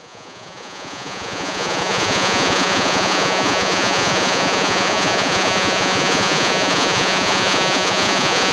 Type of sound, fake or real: fake